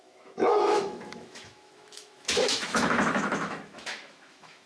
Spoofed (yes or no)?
yes